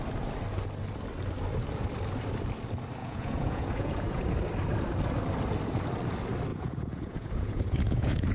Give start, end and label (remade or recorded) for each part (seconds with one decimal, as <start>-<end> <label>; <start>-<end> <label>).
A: 0.0-3.0 recorded; 3.0-4.2 remade; 4.2-6.5 recorded; 6.5-8.3 remade